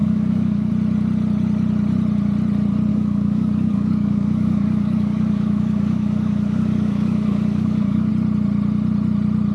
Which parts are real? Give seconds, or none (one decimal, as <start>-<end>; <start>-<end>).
0.7-2.9; 8.1-9.5